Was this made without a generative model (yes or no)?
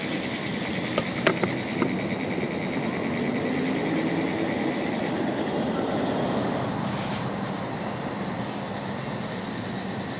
yes